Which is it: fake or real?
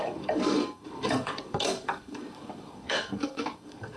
fake